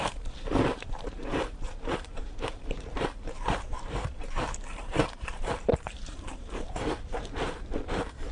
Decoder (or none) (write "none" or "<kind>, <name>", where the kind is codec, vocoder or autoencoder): vocoder, BigVGAN v2